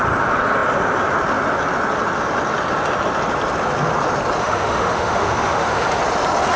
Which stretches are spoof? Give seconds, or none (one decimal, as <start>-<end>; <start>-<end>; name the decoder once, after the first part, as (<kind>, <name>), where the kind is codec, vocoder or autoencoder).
4.4-6.0 (autoencoder, DAC-VAE)